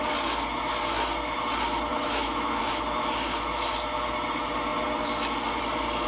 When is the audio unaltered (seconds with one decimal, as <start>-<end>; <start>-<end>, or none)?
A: 0.0-1.9; 2.6-6.1